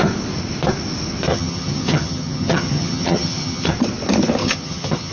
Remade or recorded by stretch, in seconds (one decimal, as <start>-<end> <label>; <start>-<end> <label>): 0.0-1.3 recorded; 1.3-3.7 remade; 3.7-4.4 recorded; 4.4-5.1 remade